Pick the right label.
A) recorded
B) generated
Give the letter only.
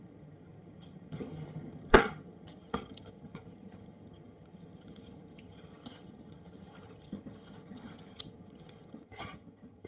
B